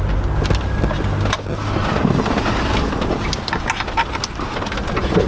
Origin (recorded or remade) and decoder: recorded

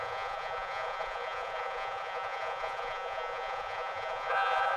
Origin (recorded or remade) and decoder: remade, vocoder, Vocos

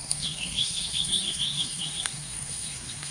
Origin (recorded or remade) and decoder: remade, codec, SNAC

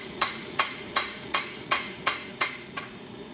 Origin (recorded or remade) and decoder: remade, vocoder, Vocos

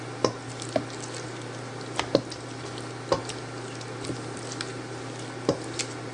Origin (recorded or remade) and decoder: recorded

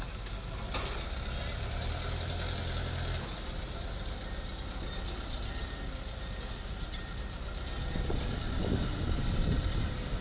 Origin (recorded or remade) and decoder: recorded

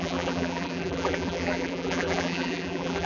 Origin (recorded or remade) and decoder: remade, vocoder, BigVGAN v2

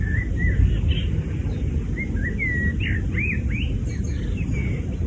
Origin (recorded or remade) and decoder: recorded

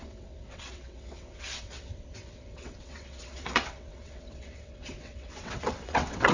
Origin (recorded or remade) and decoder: remade, vocoder, WaveNeXt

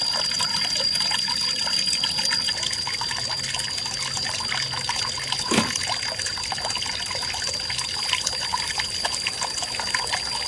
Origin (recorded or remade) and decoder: recorded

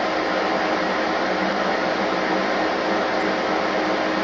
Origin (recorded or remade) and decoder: recorded